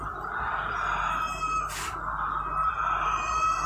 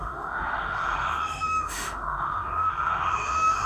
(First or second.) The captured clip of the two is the first